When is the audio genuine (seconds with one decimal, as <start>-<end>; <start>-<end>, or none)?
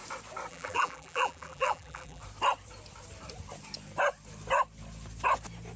0.0-0.5; 2.2-5.8